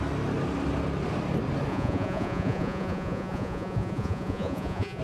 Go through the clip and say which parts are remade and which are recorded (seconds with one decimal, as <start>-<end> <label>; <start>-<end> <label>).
0.0-1.7 recorded; 1.7-5.0 remade